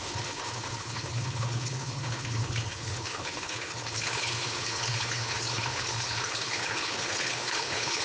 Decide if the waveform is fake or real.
fake